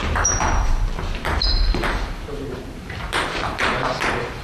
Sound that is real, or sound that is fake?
fake